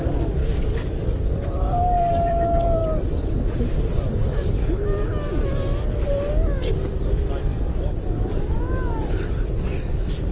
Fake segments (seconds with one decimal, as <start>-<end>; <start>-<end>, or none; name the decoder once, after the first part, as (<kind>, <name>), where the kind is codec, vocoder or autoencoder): 0.0-2.8 (codec, DAC); 3.9-4.6; 6.3-10.3